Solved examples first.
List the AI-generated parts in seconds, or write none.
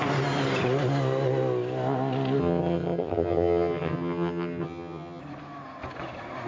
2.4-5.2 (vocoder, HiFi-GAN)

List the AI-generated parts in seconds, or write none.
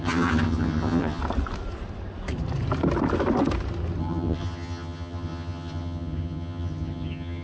0.0-1.2 (vocoder, HiFi-GAN); 4.0-7.4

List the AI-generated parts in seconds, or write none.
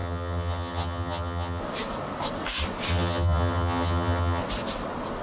0.0-1.6 (vocoder, HiFi-GAN); 2.9-4.4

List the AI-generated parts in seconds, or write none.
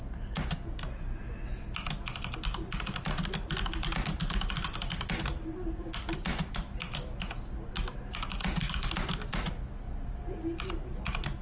none